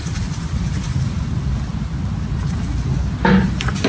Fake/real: real